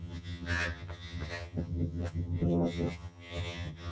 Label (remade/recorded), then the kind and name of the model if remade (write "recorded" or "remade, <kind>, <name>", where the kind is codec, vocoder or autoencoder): remade, vocoder, HiFi-GAN